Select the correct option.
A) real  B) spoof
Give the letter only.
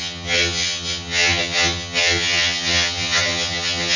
B